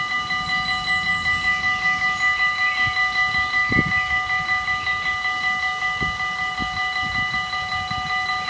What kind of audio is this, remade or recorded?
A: recorded